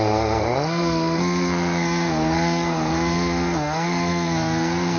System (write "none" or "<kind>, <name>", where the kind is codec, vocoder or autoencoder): codec, SNAC